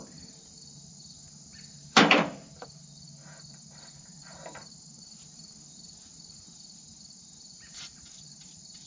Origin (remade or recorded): remade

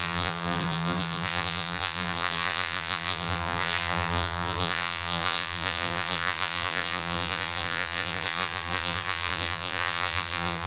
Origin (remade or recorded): remade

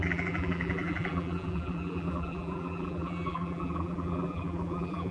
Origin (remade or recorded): remade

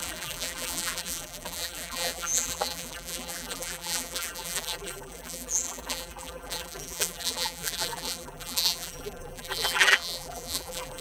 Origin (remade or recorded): remade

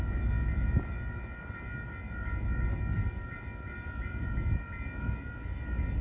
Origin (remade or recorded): recorded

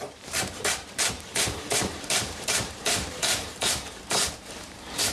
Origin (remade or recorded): remade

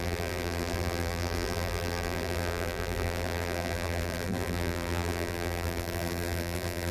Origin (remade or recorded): remade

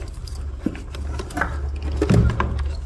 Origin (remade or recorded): recorded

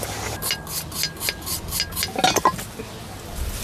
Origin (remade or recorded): recorded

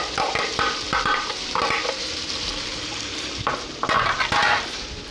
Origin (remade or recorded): remade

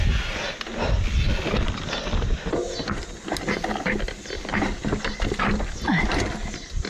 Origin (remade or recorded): recorded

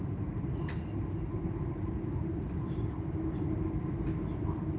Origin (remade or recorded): recorded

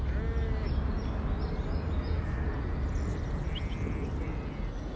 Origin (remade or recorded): recorded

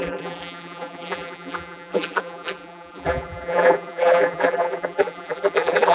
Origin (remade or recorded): remade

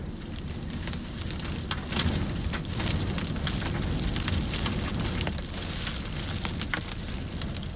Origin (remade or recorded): recorded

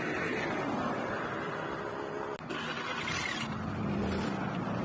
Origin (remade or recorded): recorded